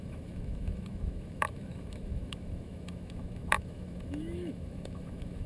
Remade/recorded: remade